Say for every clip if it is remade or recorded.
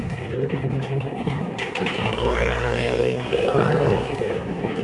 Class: remade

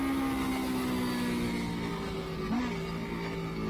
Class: recorded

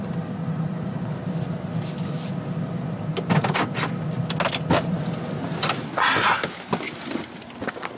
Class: recorded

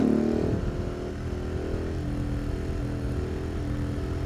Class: recorded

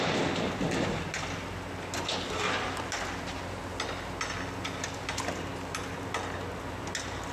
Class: recorded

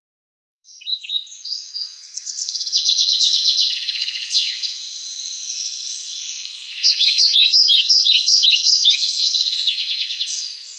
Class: remade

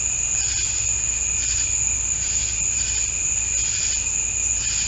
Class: recorded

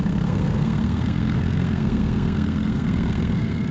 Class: remade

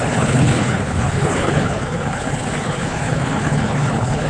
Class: remade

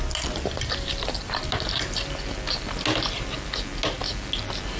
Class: recorded